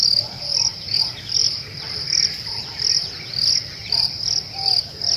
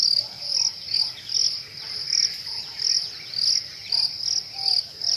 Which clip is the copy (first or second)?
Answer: first